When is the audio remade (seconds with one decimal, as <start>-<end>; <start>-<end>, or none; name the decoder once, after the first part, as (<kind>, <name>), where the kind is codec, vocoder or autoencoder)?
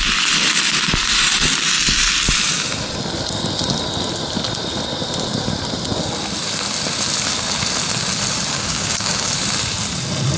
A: 8.5-9.3 (codec, DAC)